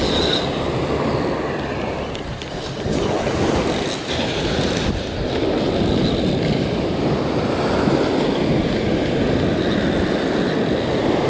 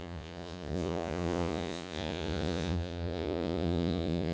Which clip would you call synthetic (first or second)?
second